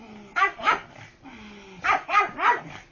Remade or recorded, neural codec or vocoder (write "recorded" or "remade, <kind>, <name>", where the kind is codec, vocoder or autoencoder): recorded